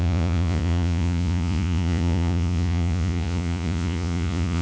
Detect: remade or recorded remade